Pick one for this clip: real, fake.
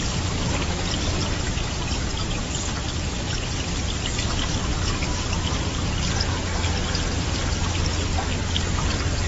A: real